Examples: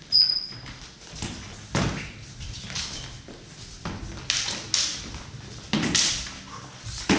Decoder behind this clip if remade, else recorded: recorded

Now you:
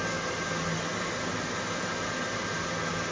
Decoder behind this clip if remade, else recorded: recorded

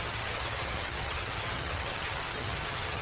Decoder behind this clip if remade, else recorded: remade, vocoder, HiFi-GAN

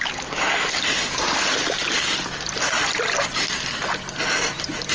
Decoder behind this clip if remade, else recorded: recorded